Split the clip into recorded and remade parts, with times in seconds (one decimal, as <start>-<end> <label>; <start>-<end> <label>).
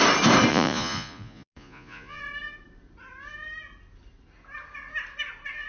0.0-0.5 recorded; 0.5-2.2 remade; 2.2-5.7 recorded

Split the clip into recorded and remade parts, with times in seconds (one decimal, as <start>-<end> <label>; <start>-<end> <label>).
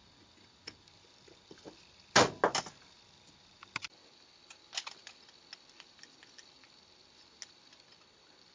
0.0-8.5 recorded